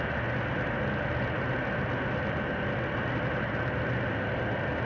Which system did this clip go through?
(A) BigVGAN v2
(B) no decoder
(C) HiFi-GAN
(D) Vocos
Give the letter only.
B